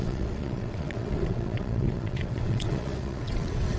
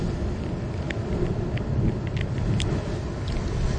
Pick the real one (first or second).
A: second